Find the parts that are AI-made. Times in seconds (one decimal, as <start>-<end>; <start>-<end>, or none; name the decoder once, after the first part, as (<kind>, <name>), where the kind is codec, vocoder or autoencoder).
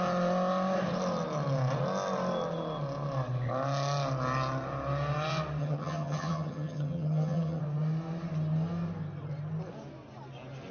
5.6-7.6 (vocoder, HiFi-GAN)